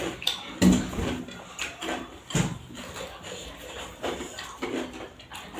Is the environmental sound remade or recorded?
remade